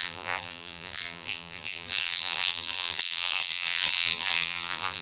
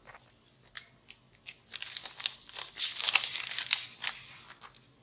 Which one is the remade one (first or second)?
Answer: first